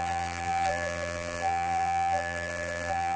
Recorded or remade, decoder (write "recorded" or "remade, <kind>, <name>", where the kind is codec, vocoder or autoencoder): remade, vocoder, BigVGAN v2